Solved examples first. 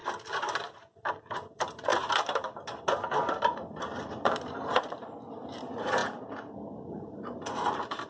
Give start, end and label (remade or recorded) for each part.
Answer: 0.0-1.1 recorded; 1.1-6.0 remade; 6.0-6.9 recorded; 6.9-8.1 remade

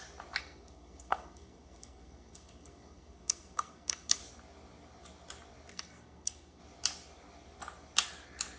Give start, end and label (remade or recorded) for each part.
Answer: 0.0-0.4 recorded; 0.4-4.2 remade; 4.2-5.7 recorded; 5.7-6.6 remade; 6.6-8.6 recorded

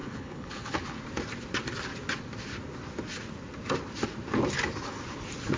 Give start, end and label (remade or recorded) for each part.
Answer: 0.0-1.0 remade; 1.0-5.6 recorded

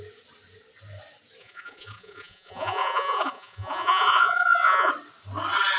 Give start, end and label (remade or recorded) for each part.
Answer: 0.0-1.4 recorded; 1.4-4.9 remade; 4.9-5.8 recorded

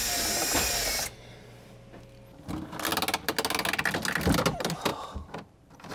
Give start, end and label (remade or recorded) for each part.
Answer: 0.0-4.9 recorded; 4.9-5.9 remade

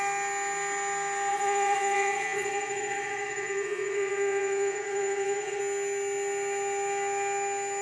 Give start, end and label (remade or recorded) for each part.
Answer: 0.0-1.3 recorded; 1.3-5.6 remade; 5.6-7.8 recorded

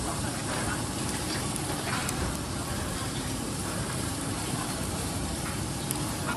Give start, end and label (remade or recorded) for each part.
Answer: 0.0-2.0 remade; 2.0-3.0 recorded; 3.0-6.4 remade

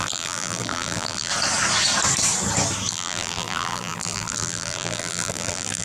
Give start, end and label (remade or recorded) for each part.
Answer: 0.0-1.3 remade; 1.3-2.9 recorded; 2.9-5.8 remade